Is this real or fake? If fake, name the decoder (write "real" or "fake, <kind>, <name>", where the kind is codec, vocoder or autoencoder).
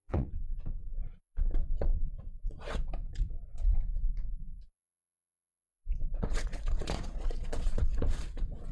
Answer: fake, vocoder, Vocos